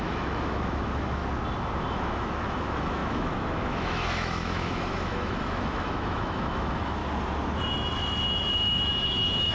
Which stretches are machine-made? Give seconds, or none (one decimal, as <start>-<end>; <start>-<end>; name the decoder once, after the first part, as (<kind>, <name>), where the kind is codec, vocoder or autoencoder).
0.0-1.2 (autoencoder, DAC-VAE); 1.9-7.0; 7.7-9.5